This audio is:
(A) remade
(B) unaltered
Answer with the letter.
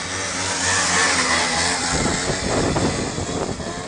B